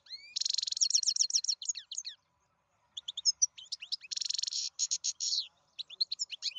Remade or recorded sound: remade